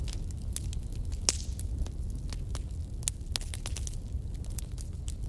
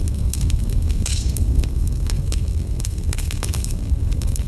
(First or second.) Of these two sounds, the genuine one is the first